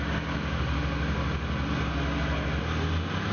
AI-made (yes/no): no